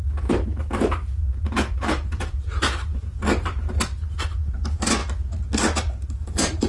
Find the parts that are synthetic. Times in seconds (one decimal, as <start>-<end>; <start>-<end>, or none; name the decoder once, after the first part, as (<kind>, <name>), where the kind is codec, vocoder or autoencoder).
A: 0.0-5.0 (vocoder, BigVGAN v2); 5.6-6.7